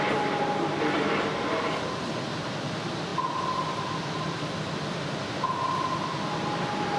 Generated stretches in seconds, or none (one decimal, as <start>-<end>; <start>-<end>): none